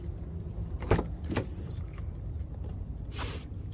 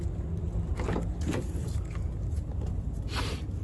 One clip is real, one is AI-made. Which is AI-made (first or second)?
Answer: first